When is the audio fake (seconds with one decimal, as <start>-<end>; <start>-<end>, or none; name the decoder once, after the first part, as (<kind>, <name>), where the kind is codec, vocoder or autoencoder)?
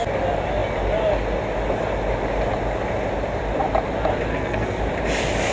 4.3-4.8 (codec, SNAC)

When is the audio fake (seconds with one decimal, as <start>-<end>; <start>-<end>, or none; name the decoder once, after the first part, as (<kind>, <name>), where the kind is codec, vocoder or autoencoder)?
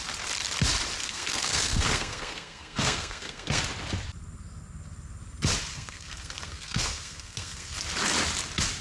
1.0-3.6 (codec, SNAC); 5.7-7.8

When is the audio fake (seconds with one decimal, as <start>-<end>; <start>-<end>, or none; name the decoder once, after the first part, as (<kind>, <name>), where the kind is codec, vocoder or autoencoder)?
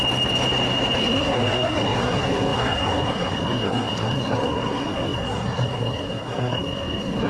1.0-7.3 (codec, SNAC)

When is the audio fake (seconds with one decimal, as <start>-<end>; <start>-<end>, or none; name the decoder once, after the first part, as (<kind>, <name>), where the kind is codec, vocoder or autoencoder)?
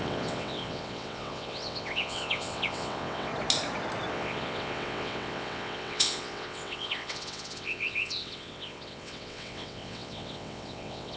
0.0-3.3 (vocoder, WaveNeXt); 4.1-11.2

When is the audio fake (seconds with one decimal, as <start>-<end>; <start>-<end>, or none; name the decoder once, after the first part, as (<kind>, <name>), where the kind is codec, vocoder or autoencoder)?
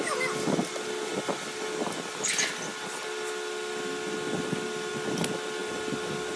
none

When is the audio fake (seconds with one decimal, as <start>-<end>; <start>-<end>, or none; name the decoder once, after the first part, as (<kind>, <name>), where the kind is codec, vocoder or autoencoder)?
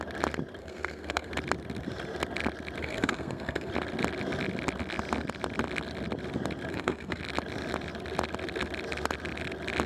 0.6-1.3 (codec, SNAC); 2.8-3.7; 6.7-7.2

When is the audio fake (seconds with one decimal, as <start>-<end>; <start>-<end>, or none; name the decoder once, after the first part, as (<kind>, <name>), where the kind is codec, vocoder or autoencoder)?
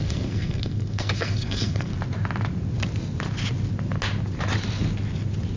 0.0-1.9 (codec, SNAC)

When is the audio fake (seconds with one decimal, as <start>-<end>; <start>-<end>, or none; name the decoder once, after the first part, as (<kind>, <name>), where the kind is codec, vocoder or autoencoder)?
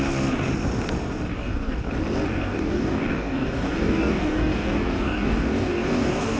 1.3-1.9 (codec, DAC); 2.3-6.4